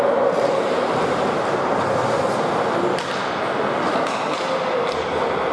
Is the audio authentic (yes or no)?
yes